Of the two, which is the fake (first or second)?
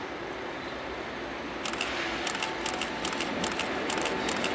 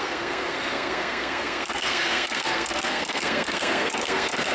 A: second